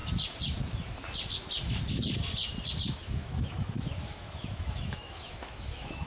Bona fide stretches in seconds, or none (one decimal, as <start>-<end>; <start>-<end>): 0.0-3.0

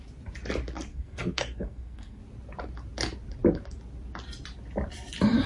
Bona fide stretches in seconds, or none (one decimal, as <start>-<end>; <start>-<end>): 0.0-0.9; 2.2-5.5

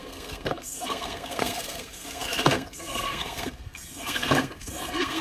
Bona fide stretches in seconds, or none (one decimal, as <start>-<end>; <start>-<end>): none

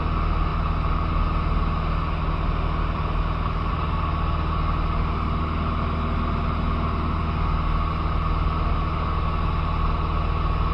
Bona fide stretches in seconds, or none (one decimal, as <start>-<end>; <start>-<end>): 0.0-10.7